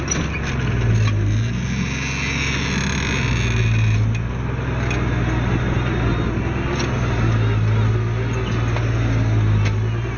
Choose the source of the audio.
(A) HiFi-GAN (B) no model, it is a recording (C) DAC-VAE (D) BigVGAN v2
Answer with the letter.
B